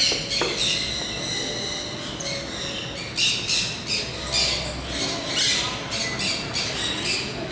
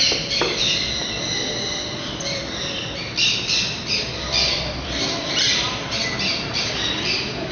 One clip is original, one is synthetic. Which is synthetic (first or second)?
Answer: second